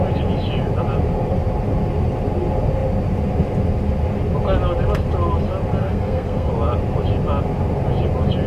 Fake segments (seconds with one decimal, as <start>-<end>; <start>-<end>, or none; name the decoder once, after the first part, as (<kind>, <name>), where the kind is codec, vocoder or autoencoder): 5.8-6.5 (codec, SNAC)